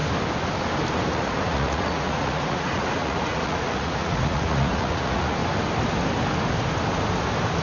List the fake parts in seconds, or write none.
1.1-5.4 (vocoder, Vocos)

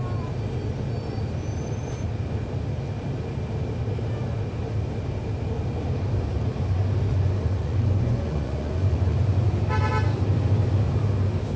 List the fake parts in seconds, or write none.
7.1-9.5 (vocoder, Vocos)